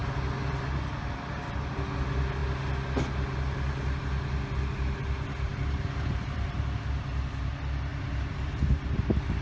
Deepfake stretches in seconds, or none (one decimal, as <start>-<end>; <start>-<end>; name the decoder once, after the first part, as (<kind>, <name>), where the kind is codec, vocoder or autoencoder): 5.5-7.5 (vocoder, BigVGAN v2); 7.9-9.0